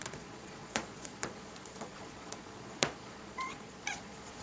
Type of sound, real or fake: fake